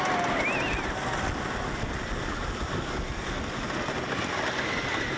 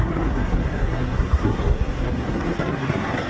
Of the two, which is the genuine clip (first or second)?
first